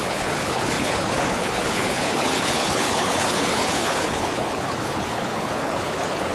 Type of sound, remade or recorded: remade